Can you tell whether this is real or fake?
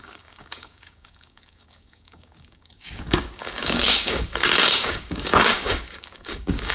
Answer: fake